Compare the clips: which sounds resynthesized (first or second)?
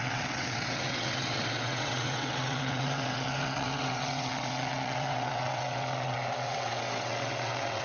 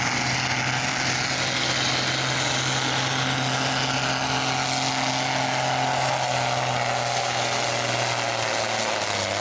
first